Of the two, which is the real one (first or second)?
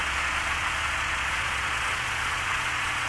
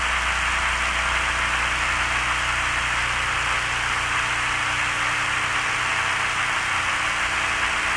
second